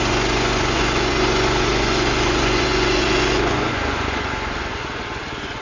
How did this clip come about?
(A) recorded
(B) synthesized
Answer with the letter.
B